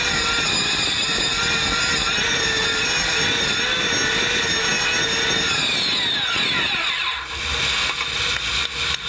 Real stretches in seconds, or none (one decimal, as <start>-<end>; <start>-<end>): 0.0-9.1